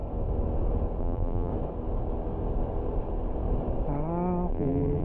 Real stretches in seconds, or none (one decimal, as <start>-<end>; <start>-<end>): 0.0-1.0; 1.5-4.5

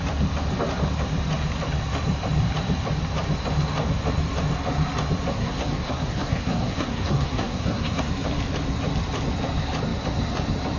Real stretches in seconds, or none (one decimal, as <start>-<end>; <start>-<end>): 0.0-5.3; 8.1-10.8

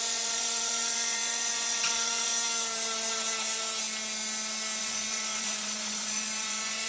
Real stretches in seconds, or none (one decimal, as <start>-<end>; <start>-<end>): 2.3-4.8